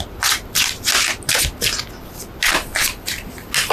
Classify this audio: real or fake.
real